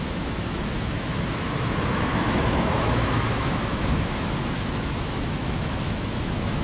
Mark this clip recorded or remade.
remade